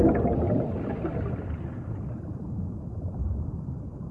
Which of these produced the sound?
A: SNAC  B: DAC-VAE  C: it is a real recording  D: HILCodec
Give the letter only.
C